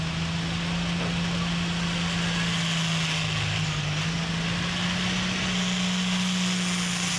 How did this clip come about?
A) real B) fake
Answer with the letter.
A